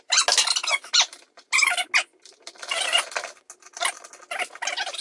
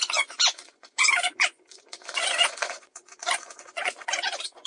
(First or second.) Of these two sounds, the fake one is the second